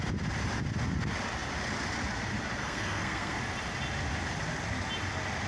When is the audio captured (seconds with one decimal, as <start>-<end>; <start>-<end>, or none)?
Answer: 0.0-2.6; 3.4-5.5